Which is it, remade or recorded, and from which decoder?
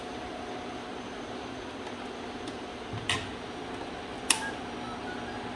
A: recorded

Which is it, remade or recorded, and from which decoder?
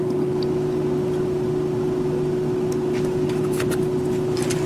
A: recorded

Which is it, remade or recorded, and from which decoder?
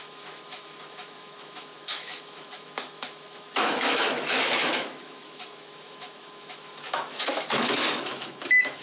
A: remade, autoencoder, DAC-VAE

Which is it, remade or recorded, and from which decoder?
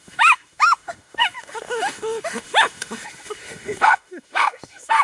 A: remade, autoencoder, DAC-VAE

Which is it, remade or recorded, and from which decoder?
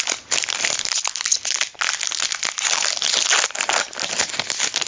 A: recorded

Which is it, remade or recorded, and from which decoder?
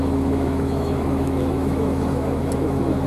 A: remade, autoencoder, DAC-VAE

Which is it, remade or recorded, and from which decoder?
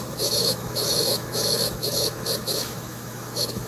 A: remade, autoencoder, DAC-VAE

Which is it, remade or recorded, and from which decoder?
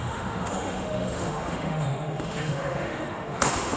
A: remade, autoencoder, DAC-VAE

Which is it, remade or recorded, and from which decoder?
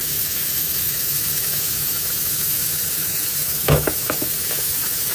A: remade, autoencoder, DAC-VAE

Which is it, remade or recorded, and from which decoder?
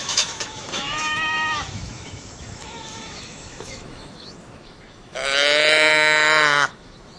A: remade, autoencoder, DAC-VAE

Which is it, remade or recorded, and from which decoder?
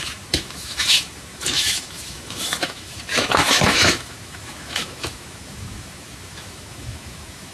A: remade, autoencoder, DAC-VAE